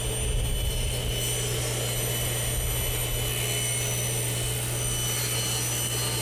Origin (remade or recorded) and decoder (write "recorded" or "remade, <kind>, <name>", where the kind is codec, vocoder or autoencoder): recorded